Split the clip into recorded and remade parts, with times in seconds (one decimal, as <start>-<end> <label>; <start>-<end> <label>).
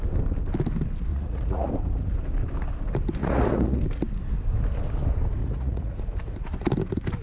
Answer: 0.0-1.1 recorded; 1.1-1.7 remade; 1.7-3.2 recorded; 3.2-3.8 remade; 3.8-5.4 recorded; 5.4-6.0 remade; 6.0-7.2 recorded